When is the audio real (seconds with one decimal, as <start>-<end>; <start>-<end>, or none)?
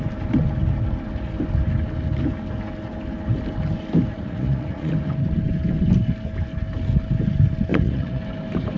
0.0-4.1; 4.9-7.7; 8.2-8.8